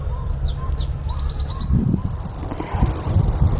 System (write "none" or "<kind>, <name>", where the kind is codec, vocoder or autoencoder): none